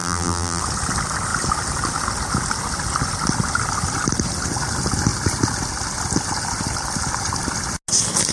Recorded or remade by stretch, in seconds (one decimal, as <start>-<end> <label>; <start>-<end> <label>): 0.0-0.6 remade; 0.6-8.3 recorded